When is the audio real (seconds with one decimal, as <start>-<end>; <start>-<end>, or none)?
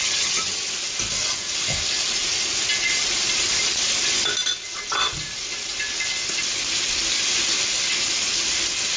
0.7-9.0